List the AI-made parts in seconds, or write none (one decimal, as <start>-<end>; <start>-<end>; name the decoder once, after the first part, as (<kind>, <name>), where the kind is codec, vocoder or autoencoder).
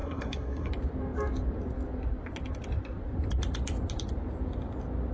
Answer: 0.0-0.7 (codec, SNAC)